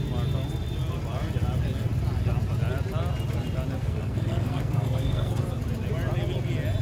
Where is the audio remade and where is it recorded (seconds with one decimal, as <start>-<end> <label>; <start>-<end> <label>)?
0.0-3.8 recorded; 3.8-5.4 remade; 5.4-6.8 recorded